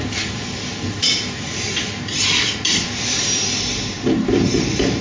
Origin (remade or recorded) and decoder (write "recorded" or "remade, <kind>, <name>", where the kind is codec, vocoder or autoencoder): recorded